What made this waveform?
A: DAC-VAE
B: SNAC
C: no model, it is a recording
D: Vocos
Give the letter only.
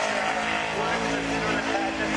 C